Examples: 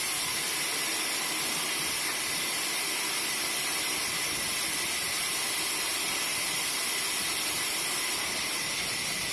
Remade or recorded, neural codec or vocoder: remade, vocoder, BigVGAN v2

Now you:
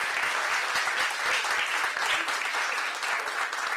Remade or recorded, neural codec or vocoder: recorded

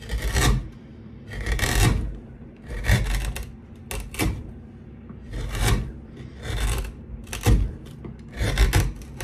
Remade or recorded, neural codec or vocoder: recorded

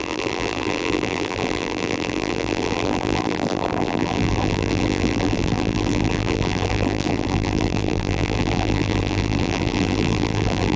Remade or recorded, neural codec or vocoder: remade, vocoder, BigVGAN v2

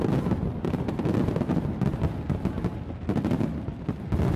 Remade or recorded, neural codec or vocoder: recorded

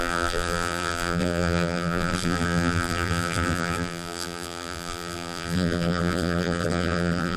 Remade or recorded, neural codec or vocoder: remade, vocoder, BigVGAN v2